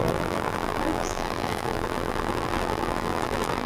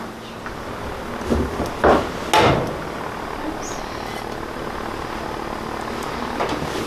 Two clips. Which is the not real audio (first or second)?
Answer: first